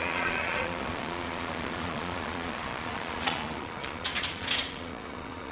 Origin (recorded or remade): remade